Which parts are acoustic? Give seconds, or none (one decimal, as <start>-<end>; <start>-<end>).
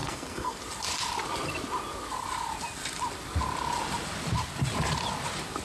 0.6-5.6